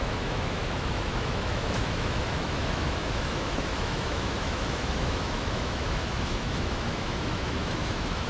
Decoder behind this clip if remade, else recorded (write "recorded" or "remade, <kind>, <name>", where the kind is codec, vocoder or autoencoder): remade, autoencoder, DAC-VAE